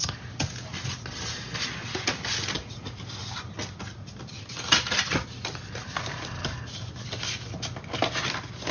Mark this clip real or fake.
real